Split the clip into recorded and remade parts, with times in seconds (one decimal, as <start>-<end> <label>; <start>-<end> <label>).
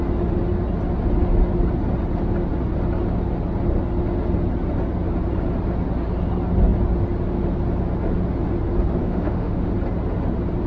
0.0-9.0 recorded; 9.0-9.7 remade; 9.7-10.7 recorded